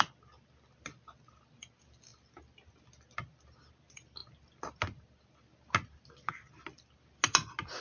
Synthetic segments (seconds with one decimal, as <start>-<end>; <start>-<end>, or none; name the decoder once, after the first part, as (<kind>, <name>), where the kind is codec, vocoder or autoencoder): none